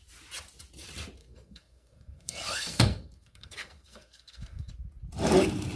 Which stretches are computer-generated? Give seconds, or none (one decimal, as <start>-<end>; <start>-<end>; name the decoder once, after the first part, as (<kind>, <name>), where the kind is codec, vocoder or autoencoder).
1.2-4.7 (codec, SNAC)